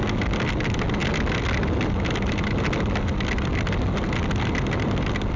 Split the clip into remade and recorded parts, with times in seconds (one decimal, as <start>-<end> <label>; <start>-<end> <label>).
0.0-5.4 recorded